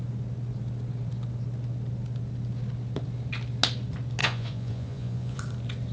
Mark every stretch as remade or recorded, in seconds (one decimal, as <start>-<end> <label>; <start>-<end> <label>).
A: 0.0-4.2 recorded; 4.2-5.4 remade; 5.4-5.9 recorded